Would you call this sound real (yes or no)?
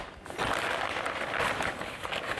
yes